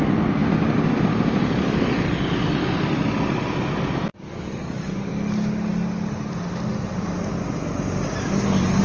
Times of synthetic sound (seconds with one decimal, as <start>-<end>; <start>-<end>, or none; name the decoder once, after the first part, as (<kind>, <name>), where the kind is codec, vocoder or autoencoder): 4.1-5.1 (codec, DAC)